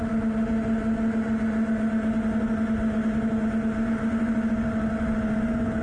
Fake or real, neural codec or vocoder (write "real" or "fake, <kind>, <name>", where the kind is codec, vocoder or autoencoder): real